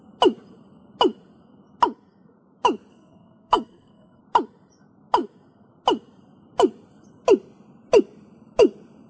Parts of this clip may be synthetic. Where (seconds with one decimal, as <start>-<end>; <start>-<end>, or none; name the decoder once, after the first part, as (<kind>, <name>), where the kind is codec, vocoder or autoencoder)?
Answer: 2.9-4.2 (codec, SNAC)